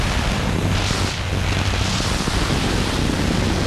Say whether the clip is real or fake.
real